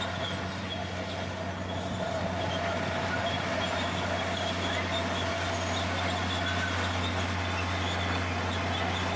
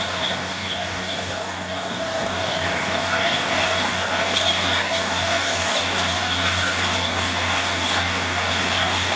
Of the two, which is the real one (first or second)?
first